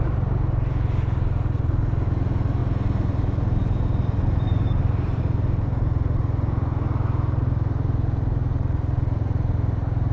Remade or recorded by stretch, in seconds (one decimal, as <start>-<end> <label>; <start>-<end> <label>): 0.0-10.1 recorded